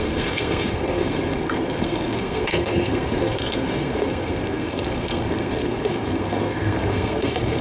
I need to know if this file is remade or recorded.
remade